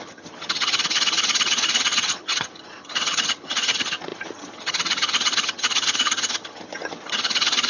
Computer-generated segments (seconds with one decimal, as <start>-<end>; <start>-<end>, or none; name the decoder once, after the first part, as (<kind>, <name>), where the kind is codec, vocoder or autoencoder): 0.0-7.7 (vocoder, HiFi-GAN)